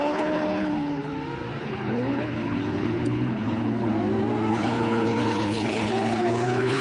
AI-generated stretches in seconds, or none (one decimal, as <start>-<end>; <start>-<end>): 0.0-1.1; 1.6-3.9; 4.5-6.8